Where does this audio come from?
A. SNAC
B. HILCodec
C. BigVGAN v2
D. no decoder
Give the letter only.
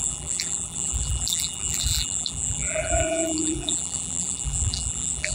C